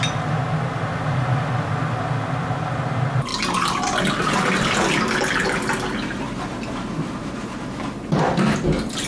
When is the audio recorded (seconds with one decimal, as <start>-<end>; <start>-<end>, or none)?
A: 0.0-9.1